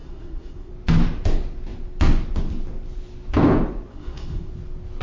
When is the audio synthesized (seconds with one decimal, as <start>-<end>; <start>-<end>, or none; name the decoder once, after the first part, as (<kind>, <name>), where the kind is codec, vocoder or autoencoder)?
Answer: 0.0-0.7 (codec, SNAC); 3.9-4.5

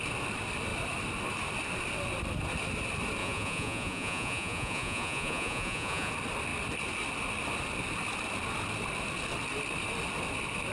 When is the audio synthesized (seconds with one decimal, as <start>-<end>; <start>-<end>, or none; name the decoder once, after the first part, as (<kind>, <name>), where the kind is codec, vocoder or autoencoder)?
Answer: 3.2-6.1 (vocoder, Vocos)

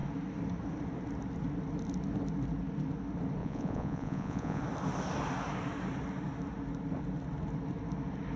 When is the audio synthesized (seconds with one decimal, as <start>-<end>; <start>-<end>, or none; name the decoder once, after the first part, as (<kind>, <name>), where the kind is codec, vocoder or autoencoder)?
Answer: 3.4-4.6 (vocoder, Vocos)